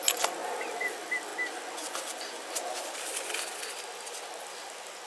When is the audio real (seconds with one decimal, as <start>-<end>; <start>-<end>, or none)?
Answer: 1.3-4.4